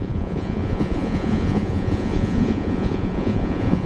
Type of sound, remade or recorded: remade